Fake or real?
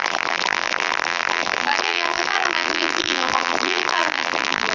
fake